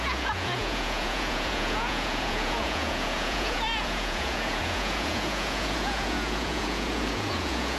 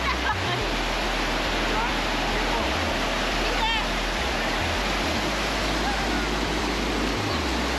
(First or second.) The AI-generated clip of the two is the first